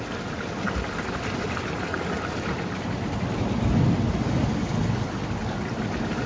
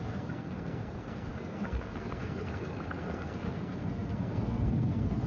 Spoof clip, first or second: second